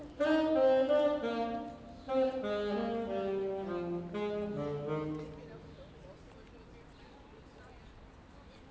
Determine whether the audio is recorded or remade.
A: recorded